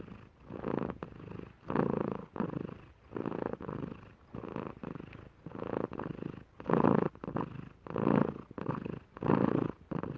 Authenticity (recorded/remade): recorded